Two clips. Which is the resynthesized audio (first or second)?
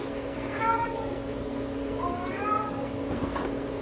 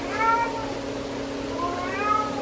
first